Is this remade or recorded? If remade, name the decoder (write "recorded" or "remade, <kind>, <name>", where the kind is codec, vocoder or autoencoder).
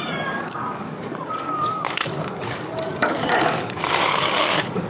remade, codec, DAC